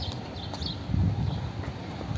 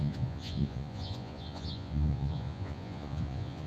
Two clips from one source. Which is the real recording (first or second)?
first